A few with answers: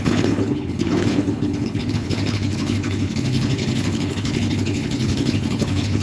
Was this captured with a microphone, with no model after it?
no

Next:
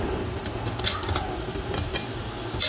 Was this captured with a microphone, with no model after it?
yes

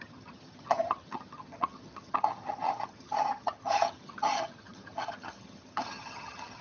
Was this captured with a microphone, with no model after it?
no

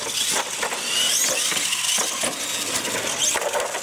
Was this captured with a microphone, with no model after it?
yes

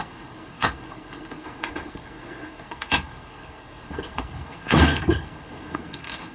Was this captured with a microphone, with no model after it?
no